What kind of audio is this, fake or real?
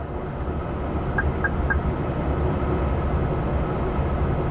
real